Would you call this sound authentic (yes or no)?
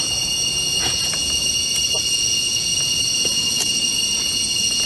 no